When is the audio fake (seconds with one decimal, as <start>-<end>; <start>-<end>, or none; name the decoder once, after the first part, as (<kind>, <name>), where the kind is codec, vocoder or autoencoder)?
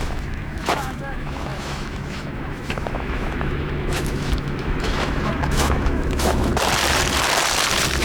0.0-6.5 (autoencoder, DAC-VAE)